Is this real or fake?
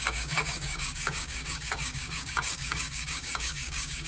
fake